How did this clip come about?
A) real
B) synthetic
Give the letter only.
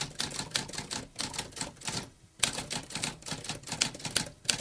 A